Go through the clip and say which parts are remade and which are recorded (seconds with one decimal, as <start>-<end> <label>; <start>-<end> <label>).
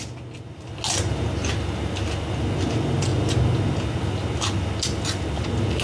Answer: 0.0-5.8 recorded